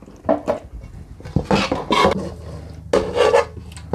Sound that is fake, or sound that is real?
real